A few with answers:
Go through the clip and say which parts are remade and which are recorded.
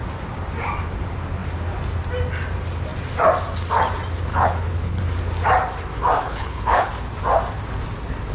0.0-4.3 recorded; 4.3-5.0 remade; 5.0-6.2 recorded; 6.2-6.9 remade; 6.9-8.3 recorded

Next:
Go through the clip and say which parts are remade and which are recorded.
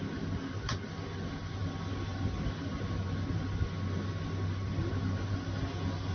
0.0-6.1 recorded